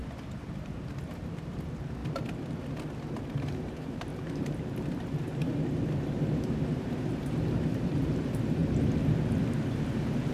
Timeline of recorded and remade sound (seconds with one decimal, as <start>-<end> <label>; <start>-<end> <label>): 0.0-0.5 recorded; 0.5-2.0 remade; 2.0-3.2 recorded; 3.2-8.6 remade; 8.6-9.4 recorded; 9.4-10.3 remade